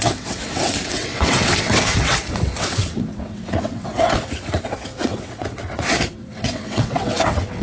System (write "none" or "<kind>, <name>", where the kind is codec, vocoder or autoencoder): vocoder, WaveNeXt